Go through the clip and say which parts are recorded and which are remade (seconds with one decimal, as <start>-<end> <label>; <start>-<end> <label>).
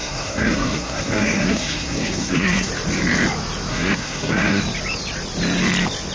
0.0-2.7 remade; 2.7-3.7 recorded; 3.7-4.6 remade; 4.6-6.1 recorded